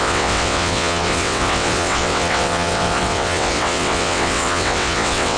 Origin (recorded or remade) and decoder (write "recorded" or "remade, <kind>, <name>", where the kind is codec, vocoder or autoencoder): remade, vocoder, WaveNeXt